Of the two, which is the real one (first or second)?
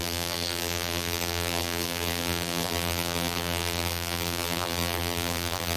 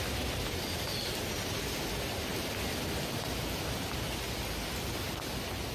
second